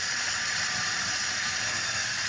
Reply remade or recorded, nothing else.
remade